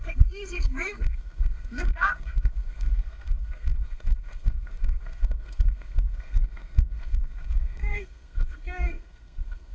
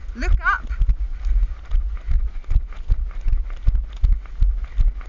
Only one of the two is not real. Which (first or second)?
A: first